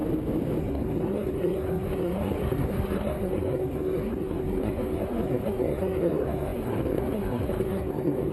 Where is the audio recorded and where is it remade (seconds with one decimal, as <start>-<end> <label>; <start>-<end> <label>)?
0.0-0.6 recorded; 0.6-8.3 remade